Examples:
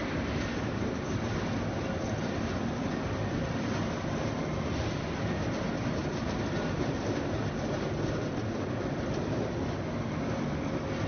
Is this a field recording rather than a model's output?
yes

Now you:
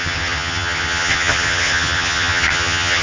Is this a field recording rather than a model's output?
no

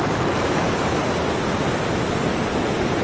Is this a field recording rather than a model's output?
yes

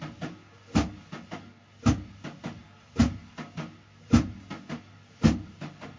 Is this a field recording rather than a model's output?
yes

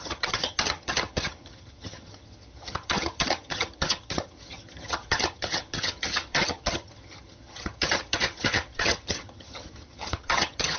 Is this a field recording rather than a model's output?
no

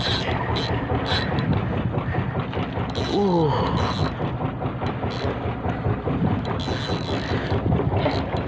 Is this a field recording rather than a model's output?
yes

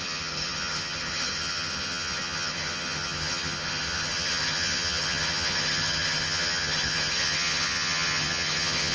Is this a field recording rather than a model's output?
no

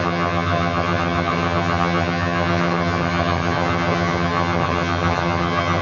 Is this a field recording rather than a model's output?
no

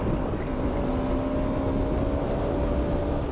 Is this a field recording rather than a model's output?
yes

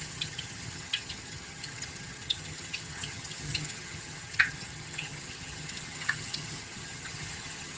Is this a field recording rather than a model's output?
no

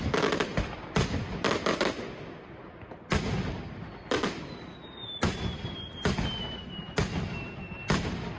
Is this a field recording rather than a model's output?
yes